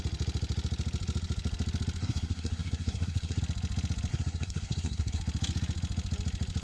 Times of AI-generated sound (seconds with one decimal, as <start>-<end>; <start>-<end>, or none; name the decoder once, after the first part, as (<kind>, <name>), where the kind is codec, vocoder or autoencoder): 2.0-3.4 (codec, SNAC); 4.1-5.2